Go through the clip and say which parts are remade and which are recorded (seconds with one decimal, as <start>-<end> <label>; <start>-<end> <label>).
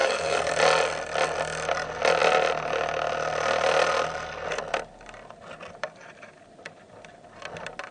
0.0-0.5 remade; 0.5-7.9 recorded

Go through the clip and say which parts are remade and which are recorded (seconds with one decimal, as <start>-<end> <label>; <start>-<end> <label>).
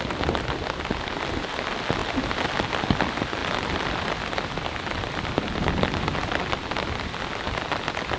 0.0-3.4 recorded; 3.4-7.3 remade; 7.3-8.2 recorded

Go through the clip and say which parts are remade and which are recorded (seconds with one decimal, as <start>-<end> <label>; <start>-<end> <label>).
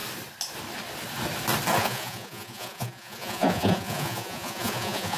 0.0-1.8 recorded; 1.8-5.2 remade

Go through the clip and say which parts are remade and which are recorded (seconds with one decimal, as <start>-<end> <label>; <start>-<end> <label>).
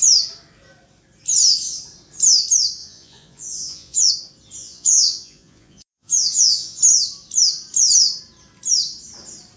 0.0-2.8 recorded; 2.8-4.1 remade; 4.1-4.6 recorded; 4.6-6.8 remade; 6.8-9.6 recorded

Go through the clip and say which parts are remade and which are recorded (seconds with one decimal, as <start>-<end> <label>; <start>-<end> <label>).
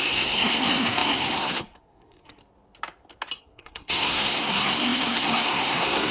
0.0-2.4 remade; 2.4-3.4 recorded; 3.4-6.1 remade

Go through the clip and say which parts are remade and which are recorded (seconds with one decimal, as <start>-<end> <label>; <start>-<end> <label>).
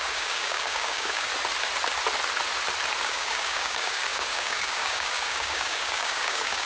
0.0-1.3 remade; 1.3-3.0 recorded; 3.0-6.7 remade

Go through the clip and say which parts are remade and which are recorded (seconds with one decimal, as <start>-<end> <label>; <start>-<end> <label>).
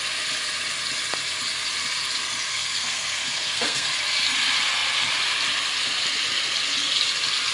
0.0-2.5 recorded; 2.5-3.9 remade; 3.9-7.5 recorded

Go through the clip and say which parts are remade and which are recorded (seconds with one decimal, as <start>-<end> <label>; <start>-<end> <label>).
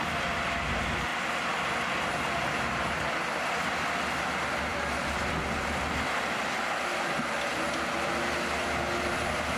0.0-9.6 recorded